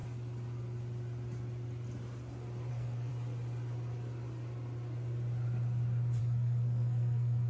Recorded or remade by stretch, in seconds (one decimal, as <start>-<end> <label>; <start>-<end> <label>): 0.0-2.7 recorded; 2.7-3.1 remade; 3.1-6.2 recorded; 6.2-7.5 remade